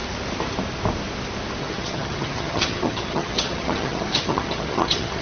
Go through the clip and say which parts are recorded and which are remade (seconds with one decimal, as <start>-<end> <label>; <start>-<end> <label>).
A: 0.0-1.6 recorded; 1.6-5.2 remade